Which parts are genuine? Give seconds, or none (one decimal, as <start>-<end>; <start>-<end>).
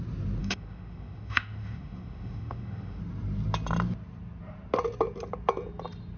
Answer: 0.0-0.4; 3.0-6.2